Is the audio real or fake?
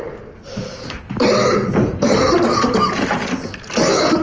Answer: real